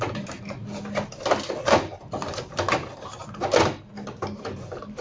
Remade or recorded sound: recorded